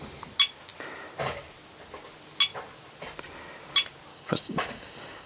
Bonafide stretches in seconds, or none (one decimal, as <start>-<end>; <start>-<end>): 0.0-4.1